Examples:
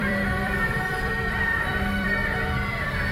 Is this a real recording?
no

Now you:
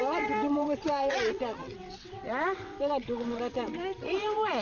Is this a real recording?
no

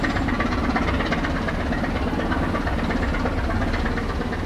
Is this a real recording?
yes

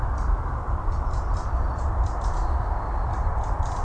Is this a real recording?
no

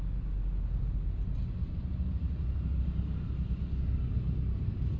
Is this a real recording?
yes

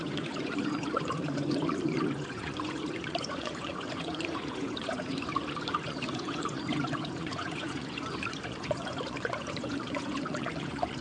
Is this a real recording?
no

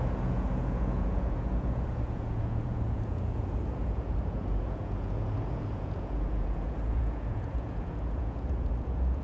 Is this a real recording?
no